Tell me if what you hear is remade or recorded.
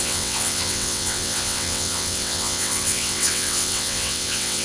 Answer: remade